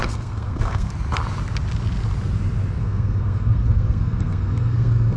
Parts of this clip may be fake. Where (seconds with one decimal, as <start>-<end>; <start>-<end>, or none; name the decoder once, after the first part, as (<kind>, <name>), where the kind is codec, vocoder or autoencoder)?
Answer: 0.0-0.9 (codec, SNAC); 2.8-5.2